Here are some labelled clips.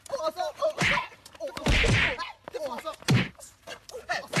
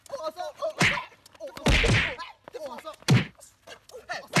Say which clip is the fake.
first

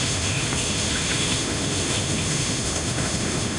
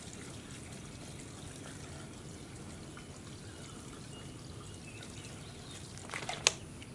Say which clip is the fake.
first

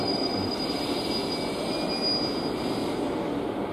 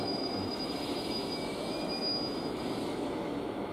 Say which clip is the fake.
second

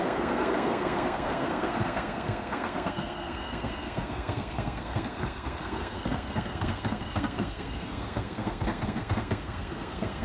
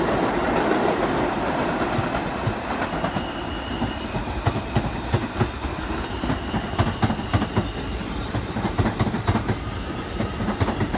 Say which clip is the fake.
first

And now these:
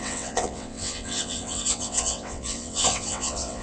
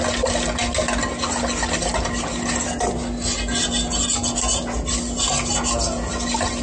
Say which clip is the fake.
first